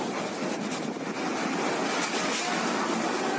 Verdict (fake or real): real